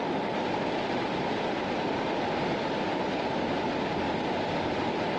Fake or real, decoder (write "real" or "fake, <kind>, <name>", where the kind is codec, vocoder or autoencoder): real